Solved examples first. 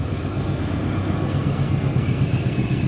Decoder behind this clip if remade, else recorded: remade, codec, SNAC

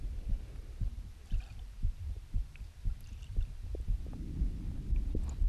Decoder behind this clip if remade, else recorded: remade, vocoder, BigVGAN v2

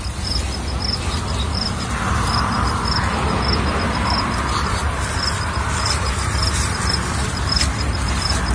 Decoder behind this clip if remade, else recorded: remade, vocoder, BigVGAN v2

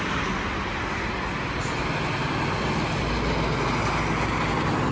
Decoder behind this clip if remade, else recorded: recorded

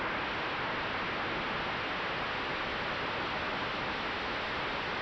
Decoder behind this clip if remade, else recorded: recorded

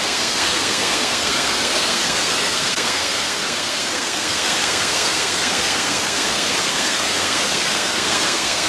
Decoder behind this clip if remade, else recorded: remade, codec, SNAC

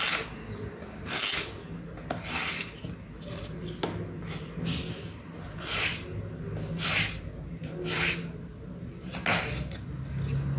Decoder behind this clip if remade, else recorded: recorded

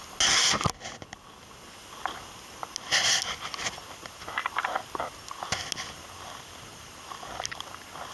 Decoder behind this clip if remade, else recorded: recorded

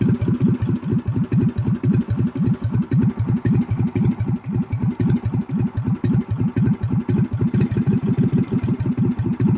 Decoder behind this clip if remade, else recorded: recorded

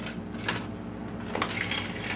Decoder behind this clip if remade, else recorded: recorded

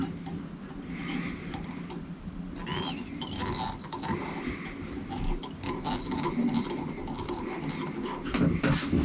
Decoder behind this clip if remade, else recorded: recorded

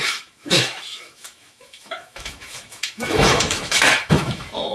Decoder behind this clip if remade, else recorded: remade, autoencoder, DAC-VAE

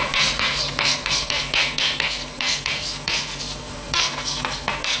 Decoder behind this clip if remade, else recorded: remade, codec, SNAC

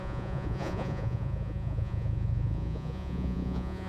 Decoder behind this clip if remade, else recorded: remade, vocoder, Vocos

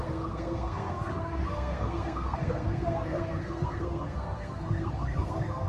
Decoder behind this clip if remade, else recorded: remade, codec, SNAC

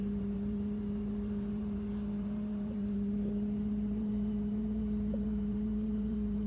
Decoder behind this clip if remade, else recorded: remade, vocoder, BigVGAN v2